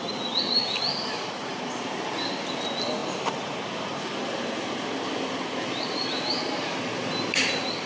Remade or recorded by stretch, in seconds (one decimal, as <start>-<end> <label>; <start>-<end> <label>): 0.0-7.9 recorded